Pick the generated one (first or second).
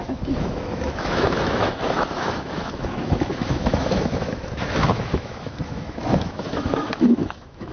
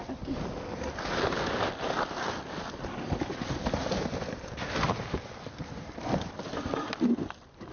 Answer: first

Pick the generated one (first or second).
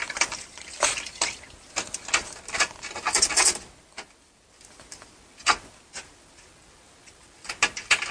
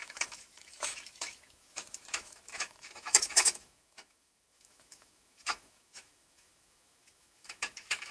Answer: second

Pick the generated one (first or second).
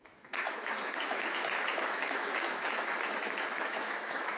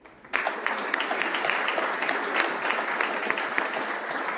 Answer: first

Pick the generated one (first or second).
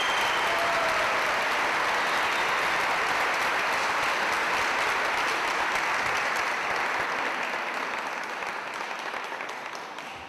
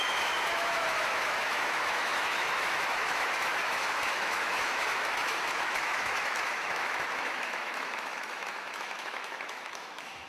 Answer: second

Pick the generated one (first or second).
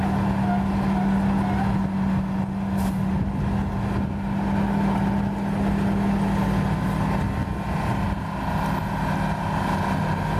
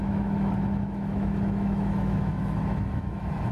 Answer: second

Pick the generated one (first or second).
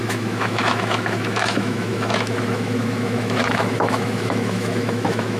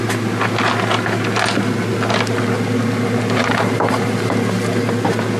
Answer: first